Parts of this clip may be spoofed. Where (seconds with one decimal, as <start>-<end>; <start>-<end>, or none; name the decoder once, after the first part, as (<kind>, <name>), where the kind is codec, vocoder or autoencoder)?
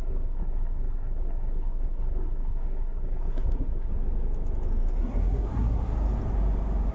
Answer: 0.0-3.9 (codec, SNAC); 5.0-5.9